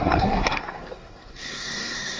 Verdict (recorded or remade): remade